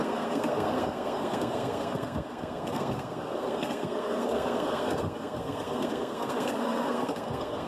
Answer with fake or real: fake